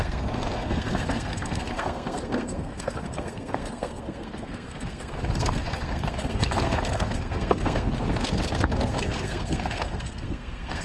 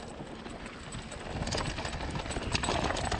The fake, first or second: first